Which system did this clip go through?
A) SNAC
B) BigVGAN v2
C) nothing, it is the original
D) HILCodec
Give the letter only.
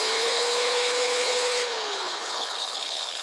D